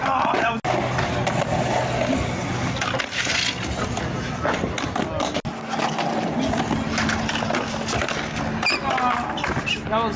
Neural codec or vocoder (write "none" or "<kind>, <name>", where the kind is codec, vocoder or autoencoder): none